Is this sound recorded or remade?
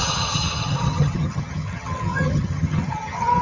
remade